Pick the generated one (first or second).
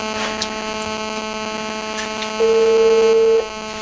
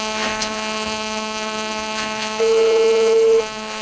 second